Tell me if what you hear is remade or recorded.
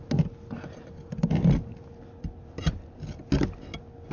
recorded